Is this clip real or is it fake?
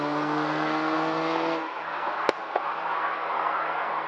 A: fake